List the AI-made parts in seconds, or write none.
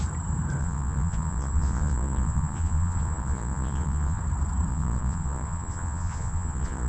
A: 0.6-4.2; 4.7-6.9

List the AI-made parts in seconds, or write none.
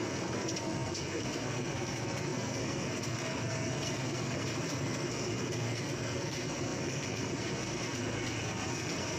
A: 0.0-9.2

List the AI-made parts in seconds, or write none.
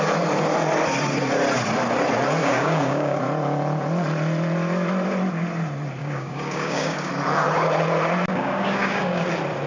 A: 2.4-3.2; 6.0-7.1; 8.3-9.2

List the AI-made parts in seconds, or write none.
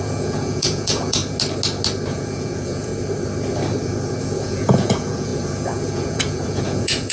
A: 0.0-1.2; 2.1-2.9; 4.2-7.1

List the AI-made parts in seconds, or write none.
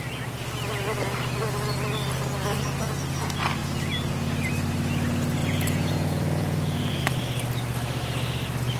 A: 5.4-6.9